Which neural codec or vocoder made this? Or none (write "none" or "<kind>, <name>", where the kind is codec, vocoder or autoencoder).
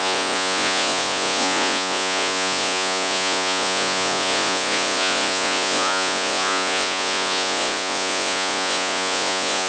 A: vocoder, Vocos